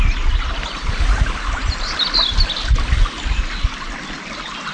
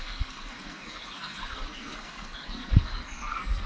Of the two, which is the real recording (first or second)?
first